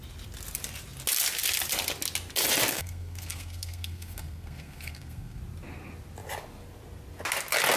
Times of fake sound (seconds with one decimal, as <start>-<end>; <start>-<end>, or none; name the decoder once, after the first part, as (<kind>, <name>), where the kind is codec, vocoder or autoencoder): 2.7-5.4 (codec, SNAC)